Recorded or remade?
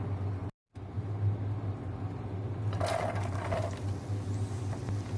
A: recorded